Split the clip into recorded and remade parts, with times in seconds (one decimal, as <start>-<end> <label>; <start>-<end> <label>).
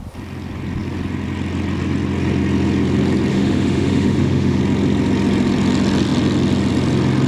0.0-3.3 recorded; 3.3-4.6 remade; 4.6-7.3 recorded